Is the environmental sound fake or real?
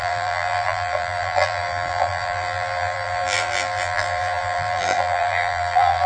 fake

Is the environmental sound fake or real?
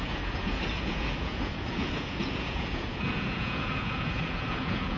fake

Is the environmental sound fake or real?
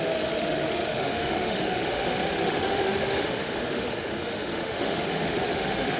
fake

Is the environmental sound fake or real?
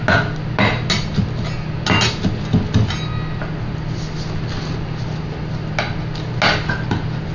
real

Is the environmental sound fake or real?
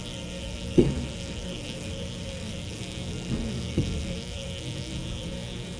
fake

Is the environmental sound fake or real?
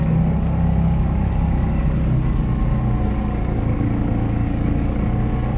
fake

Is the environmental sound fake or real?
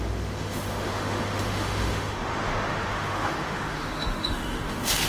fake